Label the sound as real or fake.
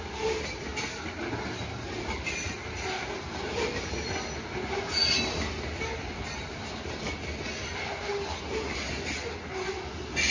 real